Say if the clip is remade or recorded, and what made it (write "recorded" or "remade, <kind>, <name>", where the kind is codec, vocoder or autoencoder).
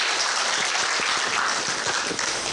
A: recorded